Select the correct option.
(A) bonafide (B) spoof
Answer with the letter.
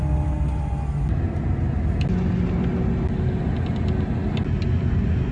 A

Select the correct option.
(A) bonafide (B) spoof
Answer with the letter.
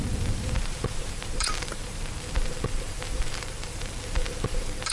B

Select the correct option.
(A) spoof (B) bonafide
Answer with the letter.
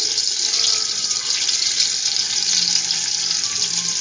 B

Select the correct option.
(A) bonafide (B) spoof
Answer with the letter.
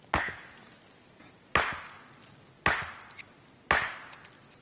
A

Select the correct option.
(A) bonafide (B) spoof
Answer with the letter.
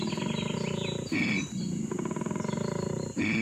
A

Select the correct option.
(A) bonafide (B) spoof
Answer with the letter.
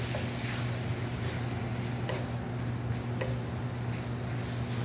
A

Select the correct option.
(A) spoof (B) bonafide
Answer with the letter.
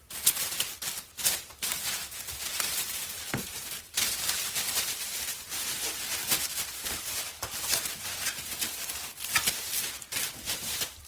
A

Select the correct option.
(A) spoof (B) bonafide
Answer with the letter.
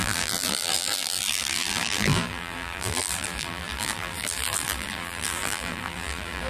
A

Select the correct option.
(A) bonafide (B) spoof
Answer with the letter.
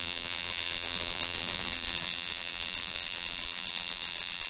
B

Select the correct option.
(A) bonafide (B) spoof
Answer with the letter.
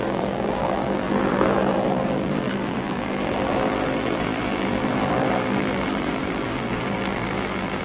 B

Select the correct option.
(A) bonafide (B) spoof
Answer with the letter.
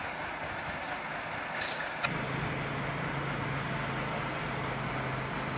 A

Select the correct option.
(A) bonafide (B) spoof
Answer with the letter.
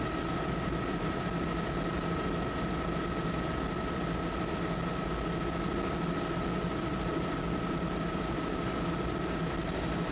A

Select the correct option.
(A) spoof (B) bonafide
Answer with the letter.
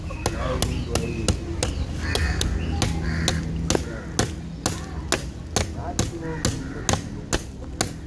B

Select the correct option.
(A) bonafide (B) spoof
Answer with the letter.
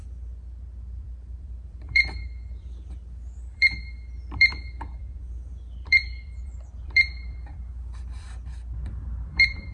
B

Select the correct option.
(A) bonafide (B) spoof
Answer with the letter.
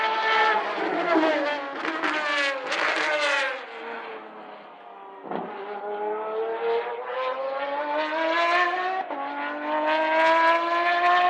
A